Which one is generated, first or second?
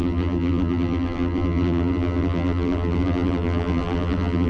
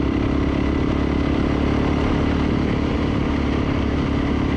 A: first